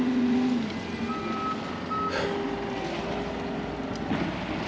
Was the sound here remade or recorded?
recorded